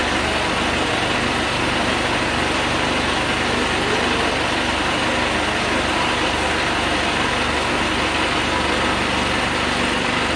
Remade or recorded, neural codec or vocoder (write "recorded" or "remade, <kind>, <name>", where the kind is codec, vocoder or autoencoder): recorded